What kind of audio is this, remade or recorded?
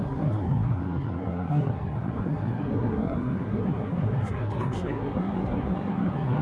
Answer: remade